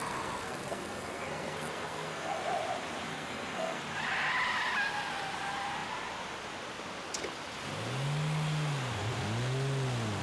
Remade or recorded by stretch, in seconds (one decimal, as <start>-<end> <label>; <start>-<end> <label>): 0.0-2.4 remade; 2.4-3.1 recorded; 3.1-3.8 remade; 3.8-10.2 recorded